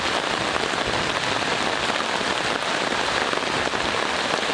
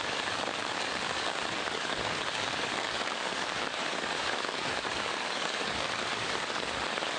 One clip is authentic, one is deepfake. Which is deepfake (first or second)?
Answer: second